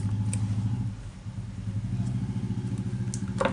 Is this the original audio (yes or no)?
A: yes